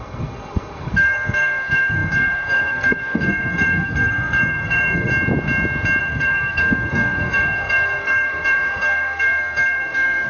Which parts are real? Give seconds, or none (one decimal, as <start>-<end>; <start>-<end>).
5.1-6.0